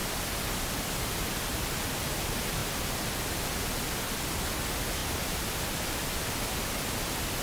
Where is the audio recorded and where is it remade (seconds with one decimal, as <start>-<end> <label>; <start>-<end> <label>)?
0.0-2.6 recorded; 2.6-4.5 remade; 4.5-7.4 recorded